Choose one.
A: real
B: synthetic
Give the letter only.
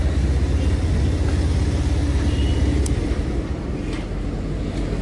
A